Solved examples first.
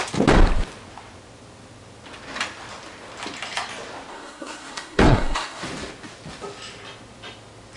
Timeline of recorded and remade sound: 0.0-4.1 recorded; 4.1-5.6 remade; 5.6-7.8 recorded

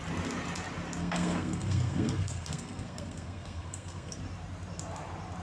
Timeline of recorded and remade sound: 0.0-1.0 recorded; 1.0-4.2 remade; 4.2-5.4 recorded

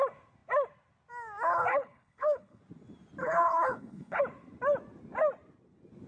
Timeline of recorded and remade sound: 0.0-1.7 recorded; 1.7-2.6 remade; 2.6-3.2 recorded; 3.2-4.2 remade; 4.2-6.1 recorded